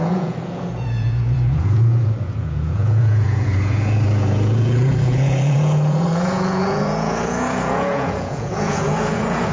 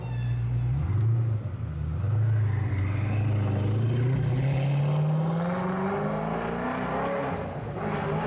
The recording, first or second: second